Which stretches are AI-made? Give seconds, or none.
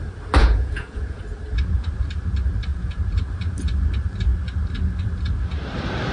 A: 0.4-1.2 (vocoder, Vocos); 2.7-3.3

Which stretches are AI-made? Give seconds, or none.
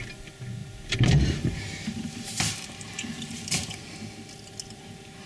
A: 0.6-3.8 (vocoder, BigVGAN v2)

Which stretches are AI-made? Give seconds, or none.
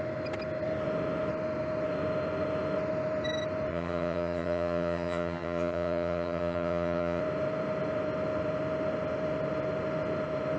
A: 3.7-7.2 (vocoder, HiFi-GAN)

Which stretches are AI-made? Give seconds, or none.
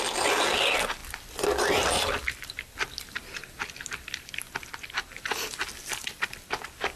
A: 1.0-4.9 (vocoder, BigVGAN v2); 5.7-6.2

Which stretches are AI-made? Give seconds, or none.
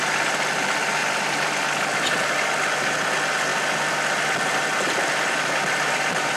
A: none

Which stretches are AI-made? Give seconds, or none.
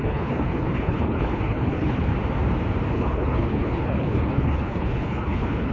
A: 0.0-2.1 (codec, HILCodec); 2.9-5.7